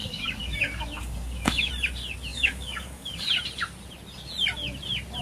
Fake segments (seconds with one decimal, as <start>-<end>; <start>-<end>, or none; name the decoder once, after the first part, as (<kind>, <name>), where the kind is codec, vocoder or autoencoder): 0.0-1.7 (codec, DAC); 2.3-3.3

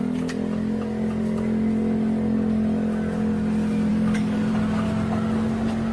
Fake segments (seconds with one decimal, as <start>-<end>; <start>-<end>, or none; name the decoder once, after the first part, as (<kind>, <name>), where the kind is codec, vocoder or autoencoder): 3.9-4.5 (codec, DAC)

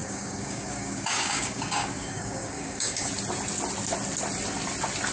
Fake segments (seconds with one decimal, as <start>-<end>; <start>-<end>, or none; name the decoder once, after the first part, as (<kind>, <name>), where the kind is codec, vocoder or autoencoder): 0.0-3.1 (codec, DAC)

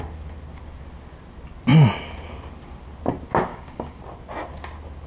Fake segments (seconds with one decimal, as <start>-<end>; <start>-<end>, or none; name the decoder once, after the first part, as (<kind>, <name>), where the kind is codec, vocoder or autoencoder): 3.5-4.0 (codec, DAC)

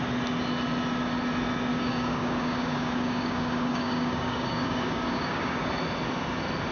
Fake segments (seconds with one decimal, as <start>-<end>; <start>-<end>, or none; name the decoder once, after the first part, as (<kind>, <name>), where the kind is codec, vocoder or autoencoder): 1.7-5.7 (codec, DAC)

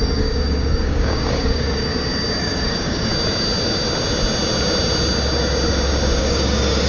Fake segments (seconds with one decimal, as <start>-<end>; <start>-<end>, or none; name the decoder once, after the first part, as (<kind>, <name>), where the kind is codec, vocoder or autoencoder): 0.0-1.9 (codec, DAC); 2.4-3.1; 6.2-6.9

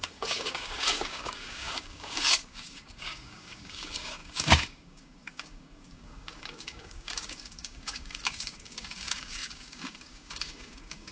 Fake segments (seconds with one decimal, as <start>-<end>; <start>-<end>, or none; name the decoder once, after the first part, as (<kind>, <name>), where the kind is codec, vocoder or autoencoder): 0.0-11.1 (codec, DAC)